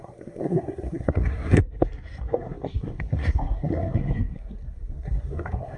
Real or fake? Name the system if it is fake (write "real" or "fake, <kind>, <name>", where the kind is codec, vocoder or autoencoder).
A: fake, codec, SNAC